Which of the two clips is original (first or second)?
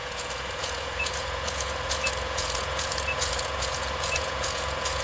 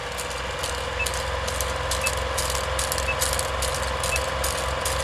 second